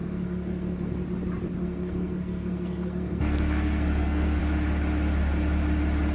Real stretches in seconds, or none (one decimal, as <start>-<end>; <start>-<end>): 1.0-1.6; 4.4-6.1